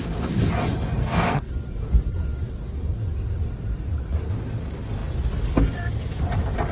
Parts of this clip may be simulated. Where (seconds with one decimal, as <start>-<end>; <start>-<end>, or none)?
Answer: 1.0-1.5